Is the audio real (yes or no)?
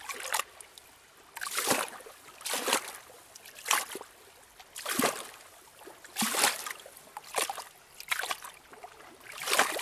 yes